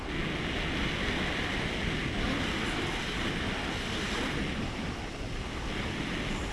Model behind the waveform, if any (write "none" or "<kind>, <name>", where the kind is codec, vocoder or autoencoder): none